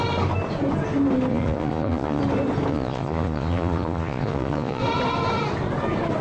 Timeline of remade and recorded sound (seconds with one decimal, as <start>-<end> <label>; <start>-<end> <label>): 0.0-1.3 recorded; 1.3-2.2 remade; 2.2-2.7 recorded; 2.7-4.8 remade; 4.8-6.2 recorded